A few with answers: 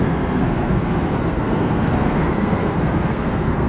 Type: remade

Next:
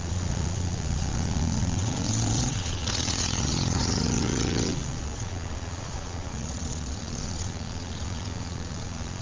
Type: remade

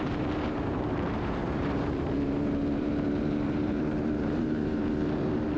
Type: remade